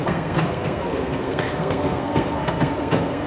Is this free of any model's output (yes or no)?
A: no